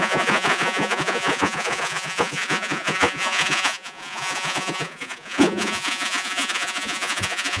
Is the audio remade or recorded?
remade